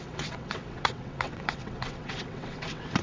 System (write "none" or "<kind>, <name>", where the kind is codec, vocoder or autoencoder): vocoder, WaveNeXt